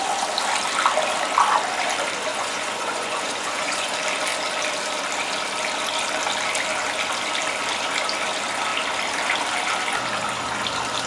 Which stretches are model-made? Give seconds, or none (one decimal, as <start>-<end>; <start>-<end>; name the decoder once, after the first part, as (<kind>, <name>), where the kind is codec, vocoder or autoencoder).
2.3-3.9 (vocoder, Vocos)